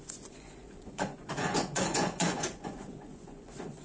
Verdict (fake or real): fake